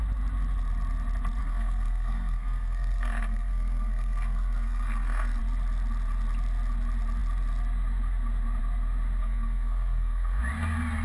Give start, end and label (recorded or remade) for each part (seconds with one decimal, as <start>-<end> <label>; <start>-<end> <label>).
0.0-1.4 recorded; 1.4-5.4 remade; 5.4-9.2 recorded; 9.2-10.4 remade; 10.4-11.0 recorded